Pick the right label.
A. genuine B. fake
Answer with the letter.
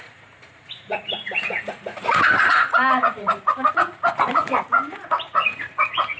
B